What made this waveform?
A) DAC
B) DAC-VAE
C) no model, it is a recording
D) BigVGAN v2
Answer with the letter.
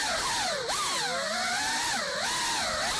C